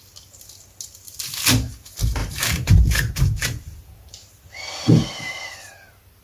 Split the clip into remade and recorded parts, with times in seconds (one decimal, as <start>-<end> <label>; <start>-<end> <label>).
0.0-2.2 recorded; 2.2-4.5 remade; 4.5-6.2 recorded